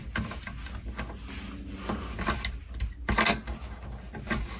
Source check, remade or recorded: recorded